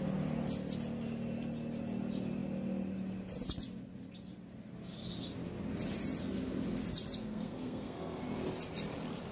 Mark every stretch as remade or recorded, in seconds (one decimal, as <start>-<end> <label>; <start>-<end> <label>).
0.0-7.2 recorded; 7.2-8.2 remade; 8.2-9.3 recorded